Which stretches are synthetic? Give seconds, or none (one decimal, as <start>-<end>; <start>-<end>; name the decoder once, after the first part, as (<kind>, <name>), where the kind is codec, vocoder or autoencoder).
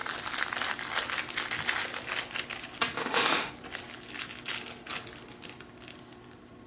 3.0-3.5 (autoencoder, DAC-VAE)